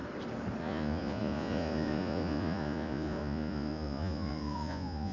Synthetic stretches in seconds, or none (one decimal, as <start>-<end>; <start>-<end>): 0.6-5.1